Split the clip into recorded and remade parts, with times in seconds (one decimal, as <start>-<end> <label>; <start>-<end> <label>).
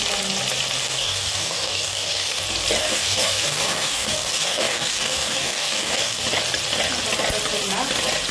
0.0-0.8 recorded; 0.8-2.4 remade; 2.4-2.8 recorded; 2.8-6.2 remade; 6.2-8.3 recorded